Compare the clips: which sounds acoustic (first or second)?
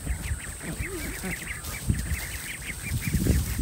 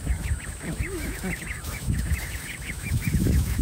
first